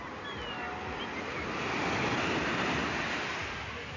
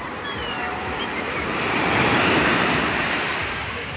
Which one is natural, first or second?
first